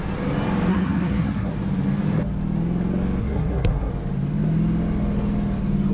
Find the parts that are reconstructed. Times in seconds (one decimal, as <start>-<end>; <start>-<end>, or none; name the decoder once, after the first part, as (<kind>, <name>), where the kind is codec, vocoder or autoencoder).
0.7-1.5 (codec, SNAC); 3.2-3.9

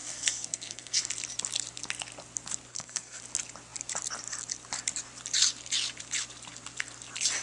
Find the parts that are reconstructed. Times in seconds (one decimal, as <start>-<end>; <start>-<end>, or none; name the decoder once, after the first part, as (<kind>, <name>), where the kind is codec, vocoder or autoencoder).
0.0-1.1 (codec, SNAC); 2.7-3.2

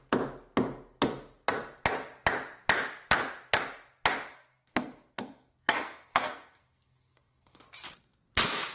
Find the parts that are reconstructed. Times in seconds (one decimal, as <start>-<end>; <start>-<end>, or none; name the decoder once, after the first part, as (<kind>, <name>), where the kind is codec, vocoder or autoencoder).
4.3-7.6 (codec, SNAC)

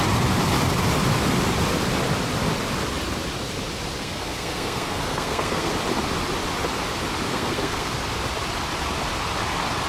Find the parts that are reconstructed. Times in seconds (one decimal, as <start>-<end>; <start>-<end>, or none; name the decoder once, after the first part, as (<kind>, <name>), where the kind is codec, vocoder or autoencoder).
4.0-5.7 (codec, SNAC); 7.3-7.9

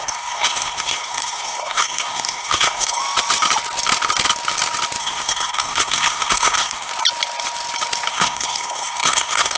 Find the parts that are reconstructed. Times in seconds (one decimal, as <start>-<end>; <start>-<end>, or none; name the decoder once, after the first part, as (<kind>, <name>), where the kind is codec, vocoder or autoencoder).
0.0-3.0 (codec, SNAC); 5.0-6.9; 8.1-9.6